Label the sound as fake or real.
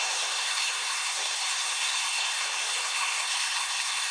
fake